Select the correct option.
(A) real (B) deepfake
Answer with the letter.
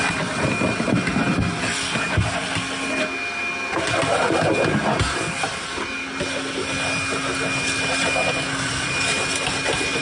A